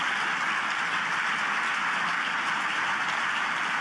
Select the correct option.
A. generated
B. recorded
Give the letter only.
B